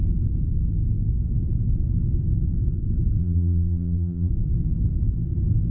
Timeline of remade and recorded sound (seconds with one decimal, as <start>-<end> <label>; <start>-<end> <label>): 0.0-3.2 recorded; 3.2-4.3 remade; 4.3-5.7 recorded

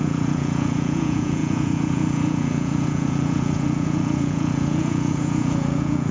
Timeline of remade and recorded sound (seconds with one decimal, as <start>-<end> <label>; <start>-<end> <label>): 0.0-6.1 remade

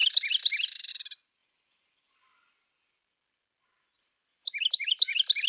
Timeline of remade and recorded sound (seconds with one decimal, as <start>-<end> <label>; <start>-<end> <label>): 0.0-1.4 remade; 1.4-4.7 recorded; 4.7-5.5 remade

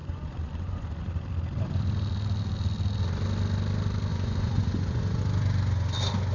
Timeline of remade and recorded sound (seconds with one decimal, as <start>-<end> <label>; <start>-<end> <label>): 0.0-1.1 remade; 1.1-4.1 recorded; 4.1-5.2 remade; 5.2-6.3 recorded

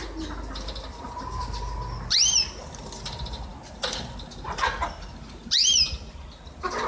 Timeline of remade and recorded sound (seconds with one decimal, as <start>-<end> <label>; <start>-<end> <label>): 0.0-6.9 recorded